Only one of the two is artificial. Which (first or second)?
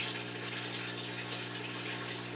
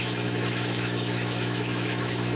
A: second